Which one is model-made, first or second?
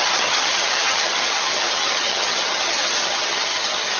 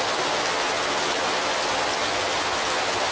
first